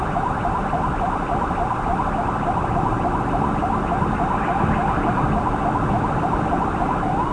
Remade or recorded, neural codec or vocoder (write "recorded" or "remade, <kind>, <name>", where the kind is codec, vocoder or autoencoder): recorded